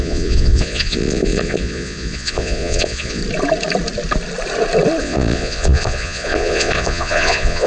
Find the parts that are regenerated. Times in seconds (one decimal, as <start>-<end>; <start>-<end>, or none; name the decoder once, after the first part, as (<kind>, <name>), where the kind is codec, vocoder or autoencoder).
0.0-3.2 (vocoder, Vocos); 5.0-7.7